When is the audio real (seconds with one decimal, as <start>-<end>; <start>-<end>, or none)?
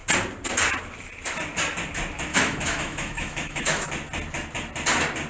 0.0-2.3; 3.9-5.3